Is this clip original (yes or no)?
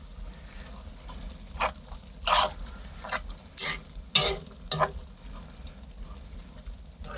yes